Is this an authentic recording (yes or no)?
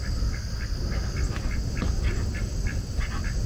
yes